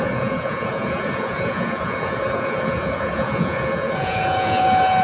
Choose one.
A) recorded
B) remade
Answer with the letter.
B